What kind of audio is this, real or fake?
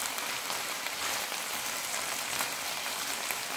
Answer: fake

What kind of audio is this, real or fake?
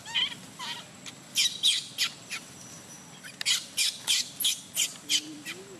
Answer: real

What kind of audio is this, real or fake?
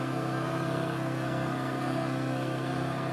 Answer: fake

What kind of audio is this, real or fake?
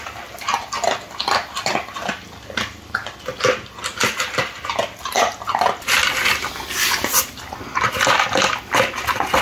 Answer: real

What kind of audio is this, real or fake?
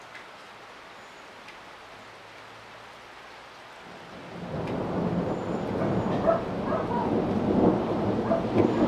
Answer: real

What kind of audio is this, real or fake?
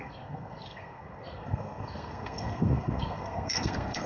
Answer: fake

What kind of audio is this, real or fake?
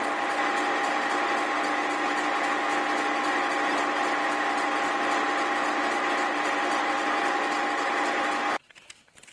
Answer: real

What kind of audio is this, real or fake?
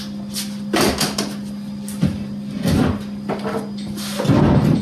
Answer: real